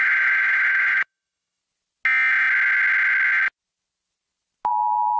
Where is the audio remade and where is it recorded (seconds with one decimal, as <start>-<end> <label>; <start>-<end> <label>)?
0.0-1.6 remade; 1.6-4.7 recorded; 4.7-5.2 remade